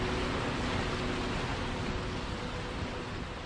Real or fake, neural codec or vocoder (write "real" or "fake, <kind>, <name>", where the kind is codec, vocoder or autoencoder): real